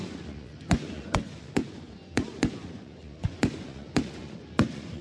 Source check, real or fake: fake